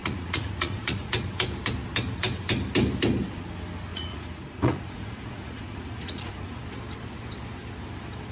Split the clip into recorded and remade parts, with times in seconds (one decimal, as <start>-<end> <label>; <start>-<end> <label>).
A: 0.0-1.1 remade; 1.1-3.9 recorded; 3.9-6.6 remade; 6.6-8.3 recorded